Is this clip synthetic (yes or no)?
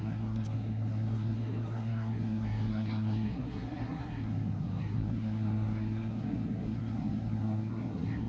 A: yes